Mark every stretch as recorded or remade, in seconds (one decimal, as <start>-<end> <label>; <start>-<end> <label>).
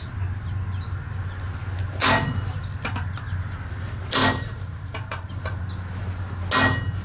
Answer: 0.0-4.2 recorded; 4.2-5.3 remade; 5.3-7.0 recorded